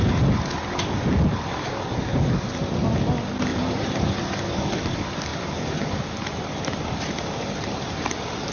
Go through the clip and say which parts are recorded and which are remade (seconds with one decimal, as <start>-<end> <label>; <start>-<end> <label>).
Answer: 0.0-3.5 recorded; 3.5-4.0 remade; 4.0-5.3 recorded; 5.3-8.5 remade